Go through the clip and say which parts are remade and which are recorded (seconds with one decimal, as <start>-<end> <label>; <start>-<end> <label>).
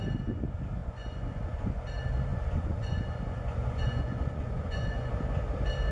0.0-0.8 recorded; 0.8-1.8 remade; 1.8-2.3 recorded; 2.3-5.1 remade; 5.1-5.9 recorded